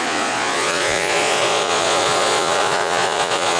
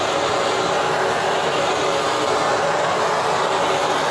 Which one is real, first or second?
second